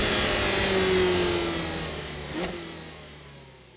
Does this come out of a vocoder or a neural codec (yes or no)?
no